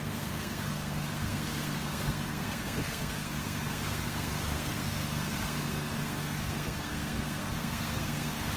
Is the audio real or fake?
fake